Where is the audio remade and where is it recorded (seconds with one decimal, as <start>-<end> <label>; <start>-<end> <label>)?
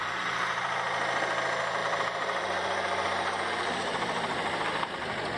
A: 0.0-0.6 remade; 0.6-1.8 recorded; 1.8-4.9 remade; 4.9-5.4 recorded